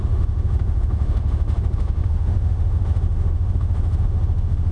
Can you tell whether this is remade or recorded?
remade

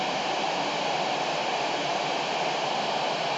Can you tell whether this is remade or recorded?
recorded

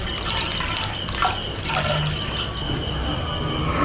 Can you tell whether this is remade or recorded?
recorded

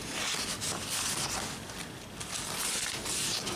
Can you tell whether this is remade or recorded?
recorded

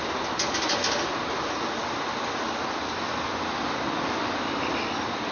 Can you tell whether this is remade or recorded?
recorded